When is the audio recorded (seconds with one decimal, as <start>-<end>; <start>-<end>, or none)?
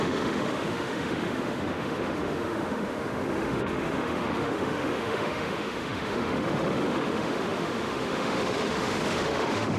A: none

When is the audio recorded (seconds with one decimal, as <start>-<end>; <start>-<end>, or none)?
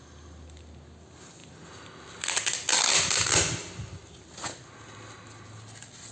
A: 0.0-6.1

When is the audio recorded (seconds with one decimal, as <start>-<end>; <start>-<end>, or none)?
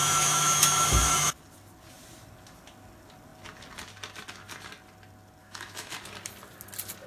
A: 1.3-5.4; 5.9-7.1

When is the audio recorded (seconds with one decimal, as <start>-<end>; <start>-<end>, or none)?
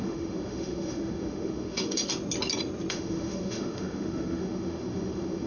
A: 2.0-2.9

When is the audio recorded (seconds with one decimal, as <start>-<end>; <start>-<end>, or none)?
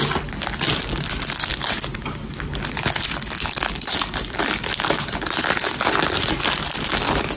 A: 0.0-7.4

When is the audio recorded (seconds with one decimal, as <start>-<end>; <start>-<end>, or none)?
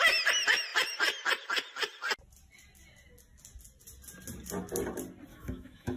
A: 0.0-5.3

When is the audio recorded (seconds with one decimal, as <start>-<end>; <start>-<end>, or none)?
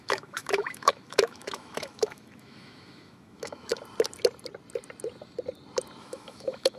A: 3.7-6.0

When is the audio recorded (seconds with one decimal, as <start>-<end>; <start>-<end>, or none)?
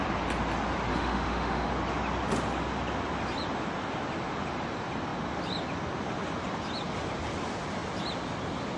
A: 0.0-0.9; 1.7-8.8